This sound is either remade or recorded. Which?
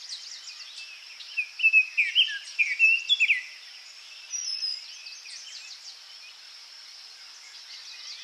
recorded